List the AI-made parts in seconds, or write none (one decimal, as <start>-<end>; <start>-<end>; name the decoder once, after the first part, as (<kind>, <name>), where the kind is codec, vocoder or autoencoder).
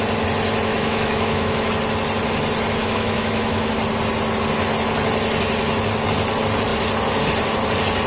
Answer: 0.7-1.7 (autoencoder, DAC-VAE); 2.8-3.8